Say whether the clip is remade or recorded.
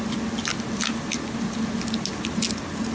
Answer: recorded